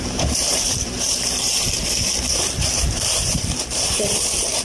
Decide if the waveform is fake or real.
fake